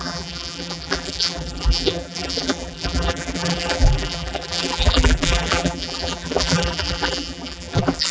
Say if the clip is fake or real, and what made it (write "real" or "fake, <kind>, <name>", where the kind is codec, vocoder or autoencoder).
fake, vocoder, BigVGAN v2